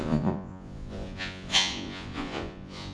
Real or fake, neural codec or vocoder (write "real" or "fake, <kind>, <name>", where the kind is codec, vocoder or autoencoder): fake, vocoder, Vocos